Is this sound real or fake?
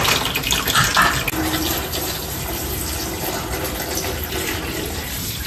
real